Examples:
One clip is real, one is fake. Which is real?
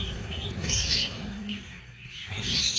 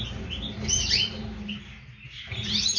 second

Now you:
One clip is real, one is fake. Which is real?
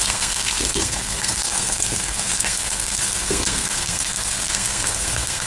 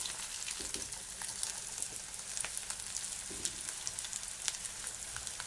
second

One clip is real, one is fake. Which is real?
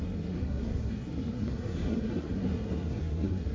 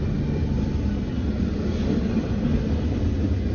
second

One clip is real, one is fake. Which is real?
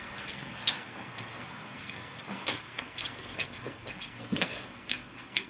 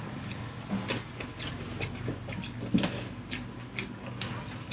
second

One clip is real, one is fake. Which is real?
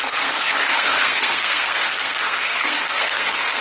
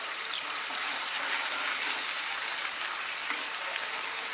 second